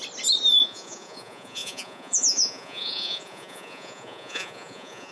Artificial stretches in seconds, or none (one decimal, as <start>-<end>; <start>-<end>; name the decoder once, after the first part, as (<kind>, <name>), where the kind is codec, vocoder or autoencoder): 0.6-5.1 (vocoder, Vocos)